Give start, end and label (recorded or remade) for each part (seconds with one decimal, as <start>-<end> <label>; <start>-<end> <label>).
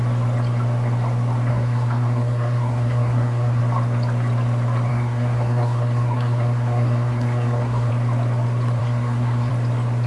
0.0-1.5 recorded; 1.5-3.6 remade; 3.6-4.9 recorded; 4.9-7.9 remade; 7.9-8.8 recorded; 8.8-9.5 remade; 9.5-10.1 recorded